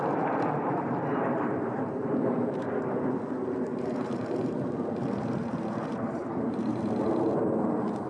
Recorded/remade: remade